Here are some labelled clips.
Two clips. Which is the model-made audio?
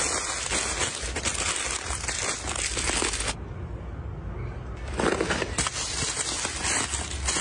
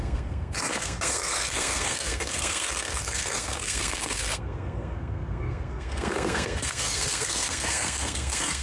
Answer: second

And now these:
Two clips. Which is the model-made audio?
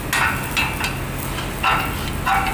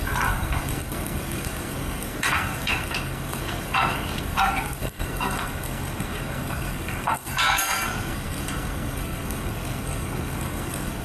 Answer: second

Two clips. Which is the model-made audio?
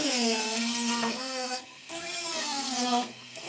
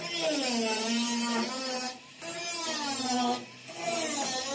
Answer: first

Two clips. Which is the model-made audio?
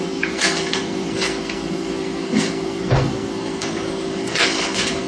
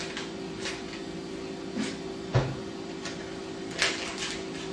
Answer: first